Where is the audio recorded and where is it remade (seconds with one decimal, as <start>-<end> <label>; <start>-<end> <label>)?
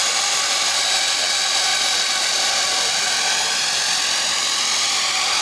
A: 0.0-5.4 recorded